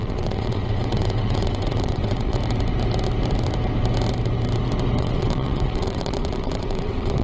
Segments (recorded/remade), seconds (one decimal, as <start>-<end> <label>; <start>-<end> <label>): 0.0-2.4 remade; 2.4-5.0 recorded; 5.0-7.2 remade